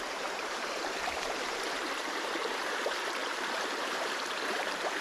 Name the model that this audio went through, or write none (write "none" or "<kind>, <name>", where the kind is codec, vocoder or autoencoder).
vocoder, BigVGAN v2